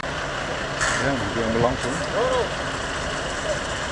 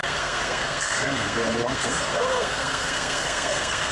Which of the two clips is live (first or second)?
first